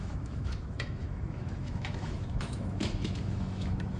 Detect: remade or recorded remade